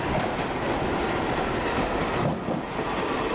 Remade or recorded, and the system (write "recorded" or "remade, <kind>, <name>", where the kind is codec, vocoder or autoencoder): recorded